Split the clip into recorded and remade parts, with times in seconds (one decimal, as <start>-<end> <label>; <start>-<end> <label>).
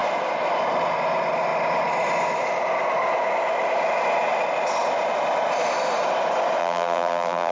0.0-6.6 recorded; 6.6-7.5 remade